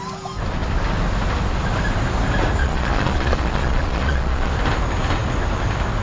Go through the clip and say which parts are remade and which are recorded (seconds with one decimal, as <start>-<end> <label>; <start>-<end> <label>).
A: 0.0-2.6 recorded; 2.6-4.5 remade; 4.5-6.0 recorded